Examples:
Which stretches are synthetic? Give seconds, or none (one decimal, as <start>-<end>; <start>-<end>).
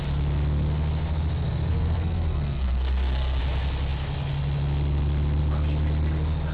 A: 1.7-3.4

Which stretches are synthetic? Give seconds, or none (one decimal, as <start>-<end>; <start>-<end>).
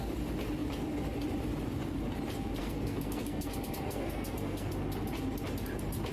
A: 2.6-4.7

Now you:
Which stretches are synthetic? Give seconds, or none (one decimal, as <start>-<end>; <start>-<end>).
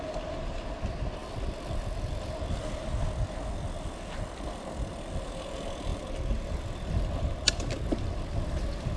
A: none